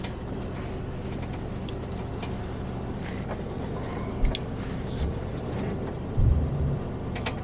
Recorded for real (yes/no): yes